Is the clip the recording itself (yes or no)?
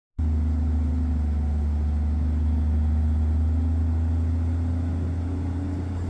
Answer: yes